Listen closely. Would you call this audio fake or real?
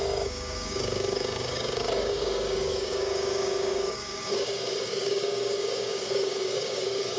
fake